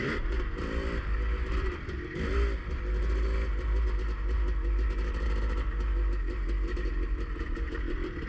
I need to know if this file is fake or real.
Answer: real